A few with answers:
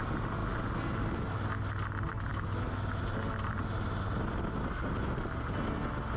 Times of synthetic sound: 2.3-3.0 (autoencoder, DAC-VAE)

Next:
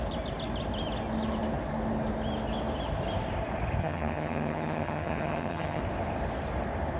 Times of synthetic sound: 3.8-5.8 (vocoder, HiFi-GAN)

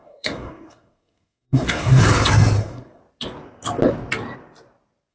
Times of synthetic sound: 0.0-2.0 (codec, SNAC); 2.6-3.0

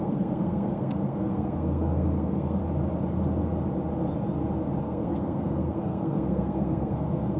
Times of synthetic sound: 0.0-2.6 (codec, SNAC); 4.8-7.4